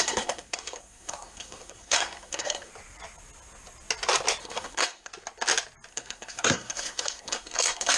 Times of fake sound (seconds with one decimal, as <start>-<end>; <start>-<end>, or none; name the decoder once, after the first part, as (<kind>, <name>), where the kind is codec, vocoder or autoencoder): 0.0-2.7 (codec, SNAC); 4.4-5.1; 5.9-8.0